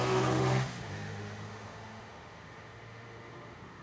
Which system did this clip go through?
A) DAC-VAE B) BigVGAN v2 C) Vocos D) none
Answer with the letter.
A